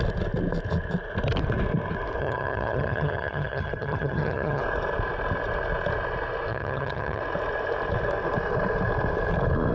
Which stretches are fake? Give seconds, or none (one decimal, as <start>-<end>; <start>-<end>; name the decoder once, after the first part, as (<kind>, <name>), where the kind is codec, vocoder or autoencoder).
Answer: 2.2-4.6 (vocoder, HiFi-GAN); 6.5-7.2